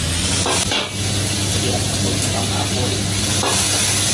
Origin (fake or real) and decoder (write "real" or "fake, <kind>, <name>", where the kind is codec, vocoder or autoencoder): real